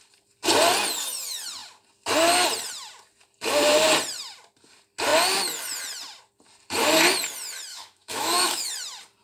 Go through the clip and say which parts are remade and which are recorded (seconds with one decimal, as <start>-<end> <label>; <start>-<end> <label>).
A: 0.0-7.7 recorded; 7.7-8.7 remade; 8.7-9.2 recorded